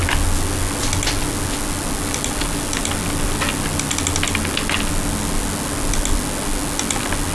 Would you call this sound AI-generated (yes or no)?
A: no